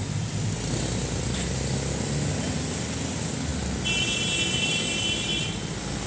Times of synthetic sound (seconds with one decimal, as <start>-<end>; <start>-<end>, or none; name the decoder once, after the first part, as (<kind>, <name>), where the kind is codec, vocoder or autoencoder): none